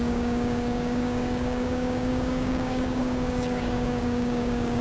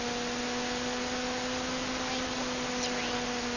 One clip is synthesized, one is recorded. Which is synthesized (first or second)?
first